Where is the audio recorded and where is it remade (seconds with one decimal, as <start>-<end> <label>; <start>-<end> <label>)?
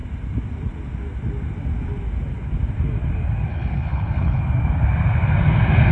0.0-3.5 recorded; 3.5-4.4 remade; 4.4-5.9 recorded